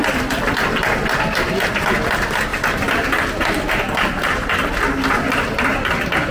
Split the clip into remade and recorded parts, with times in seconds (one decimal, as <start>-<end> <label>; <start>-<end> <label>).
0.0-6.3 recorded